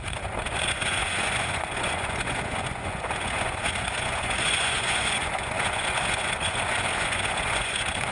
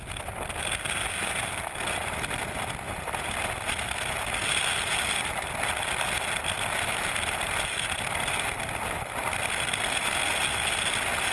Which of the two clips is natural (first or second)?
second